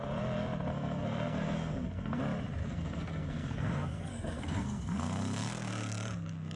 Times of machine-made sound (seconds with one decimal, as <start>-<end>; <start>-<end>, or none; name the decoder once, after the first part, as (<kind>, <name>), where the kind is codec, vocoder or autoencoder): 0.7-2.2 (codec, SNAC); 2.6-6.6